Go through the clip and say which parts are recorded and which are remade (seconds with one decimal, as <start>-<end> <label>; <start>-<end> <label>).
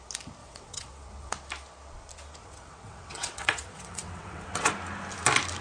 0.0-0.4 recorded; 0.4-1.3 remade; 1.3-2.4 recorded; 2.4-4.7 remade; 4.7-5.6 recorded